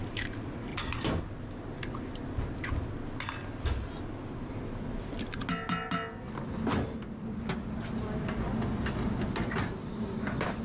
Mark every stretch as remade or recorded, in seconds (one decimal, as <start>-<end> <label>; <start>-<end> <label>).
0.0-10.6 recorded